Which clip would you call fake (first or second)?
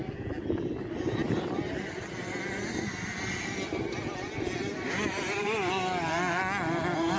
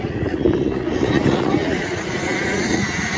second